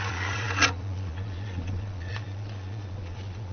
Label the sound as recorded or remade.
remade